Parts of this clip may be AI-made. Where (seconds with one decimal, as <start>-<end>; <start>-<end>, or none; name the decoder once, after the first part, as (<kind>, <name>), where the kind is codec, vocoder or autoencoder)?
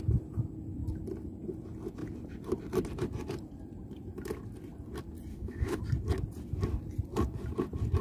5.3-5.8 (autoencoder, DAC-VAE)